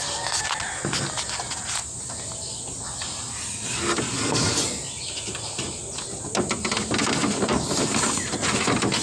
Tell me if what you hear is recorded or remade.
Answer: recorded